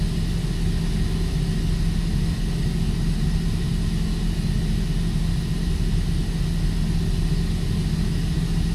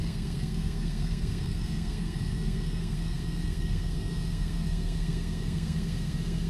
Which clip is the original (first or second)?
first